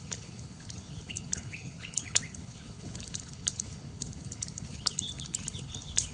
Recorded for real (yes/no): no